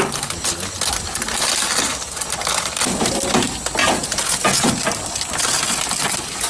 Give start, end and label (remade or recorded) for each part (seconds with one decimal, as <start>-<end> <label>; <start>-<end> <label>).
0.0-3.8 recorded; 3.8-4.7 remade; 4.7-6.5 recorded